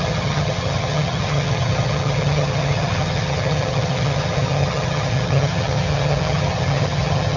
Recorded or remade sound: remade